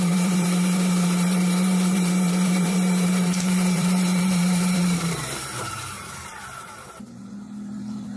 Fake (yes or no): yes